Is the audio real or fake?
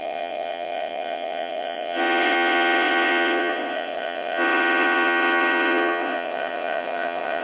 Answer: fake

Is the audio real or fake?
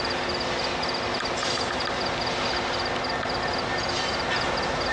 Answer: real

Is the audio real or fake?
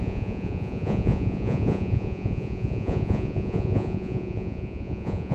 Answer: fake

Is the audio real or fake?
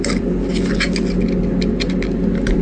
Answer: real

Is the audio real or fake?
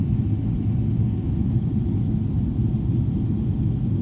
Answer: real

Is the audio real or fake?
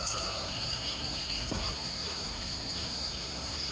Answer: fake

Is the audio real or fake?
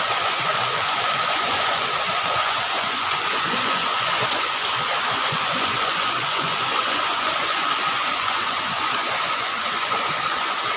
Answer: fake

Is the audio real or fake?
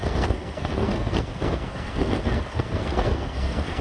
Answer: fake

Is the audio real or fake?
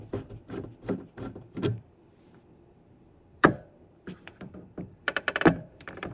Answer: fake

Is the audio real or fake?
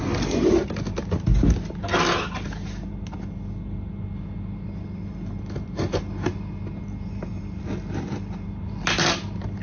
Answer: real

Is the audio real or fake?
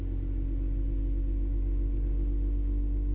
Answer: real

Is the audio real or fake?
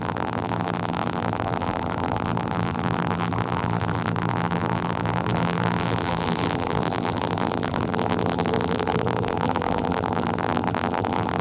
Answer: fake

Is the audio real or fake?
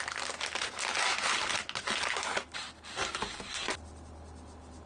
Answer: real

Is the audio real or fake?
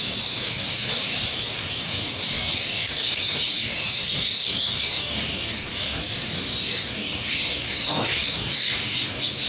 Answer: fake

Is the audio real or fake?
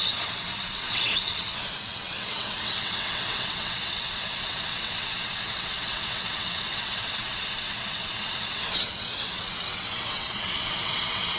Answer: fake